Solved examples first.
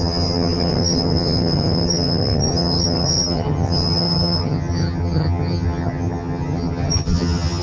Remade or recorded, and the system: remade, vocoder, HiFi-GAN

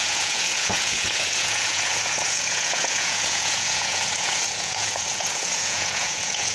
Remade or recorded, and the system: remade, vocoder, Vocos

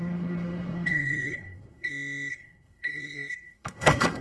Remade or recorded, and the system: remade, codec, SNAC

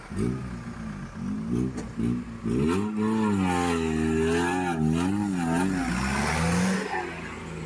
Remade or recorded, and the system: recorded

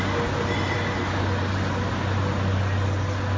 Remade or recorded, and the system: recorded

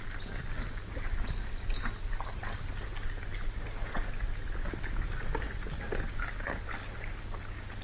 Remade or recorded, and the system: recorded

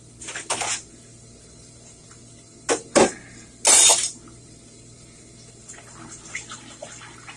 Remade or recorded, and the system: recorded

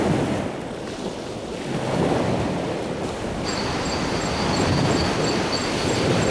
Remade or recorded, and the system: recorded